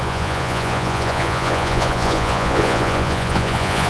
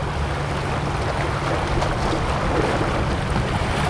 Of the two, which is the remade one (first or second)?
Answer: first